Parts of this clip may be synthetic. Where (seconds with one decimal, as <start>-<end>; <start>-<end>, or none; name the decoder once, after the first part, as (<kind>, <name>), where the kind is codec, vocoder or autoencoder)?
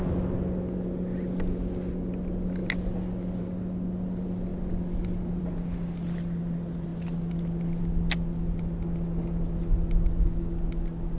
none